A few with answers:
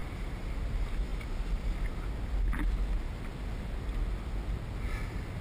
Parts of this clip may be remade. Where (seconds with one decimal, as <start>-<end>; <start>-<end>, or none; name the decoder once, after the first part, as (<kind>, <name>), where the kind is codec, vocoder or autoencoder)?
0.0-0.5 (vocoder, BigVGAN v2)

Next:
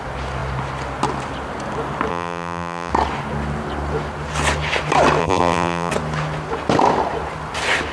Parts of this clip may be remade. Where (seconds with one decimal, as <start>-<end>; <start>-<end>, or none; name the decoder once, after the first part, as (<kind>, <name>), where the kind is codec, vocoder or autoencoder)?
2.1-2.9 (vocoder, BigVGAN v2); 5.2-5.9

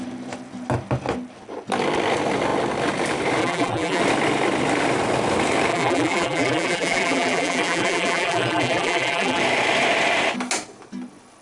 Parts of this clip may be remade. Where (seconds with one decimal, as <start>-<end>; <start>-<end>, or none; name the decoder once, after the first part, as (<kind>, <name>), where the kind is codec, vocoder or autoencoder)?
3.4-4.0 (vocoder, BigVGAN v2); 5.7-9.4